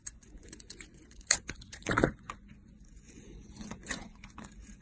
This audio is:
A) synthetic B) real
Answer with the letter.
A